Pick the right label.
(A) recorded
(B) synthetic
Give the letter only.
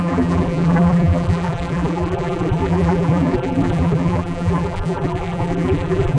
B